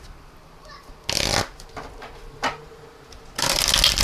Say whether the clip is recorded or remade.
recorded